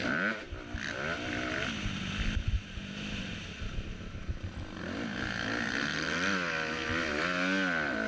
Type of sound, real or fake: real